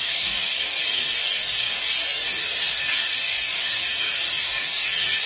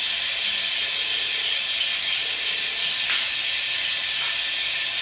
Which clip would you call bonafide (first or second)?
second